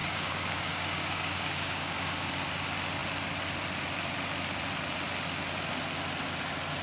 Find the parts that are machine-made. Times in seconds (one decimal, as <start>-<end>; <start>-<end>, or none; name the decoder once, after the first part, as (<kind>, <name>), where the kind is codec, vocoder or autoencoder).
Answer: 0.0-2.3 (codec, DAC)